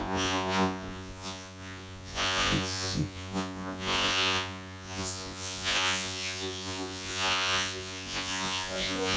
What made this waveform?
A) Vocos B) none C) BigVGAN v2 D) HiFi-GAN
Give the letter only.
A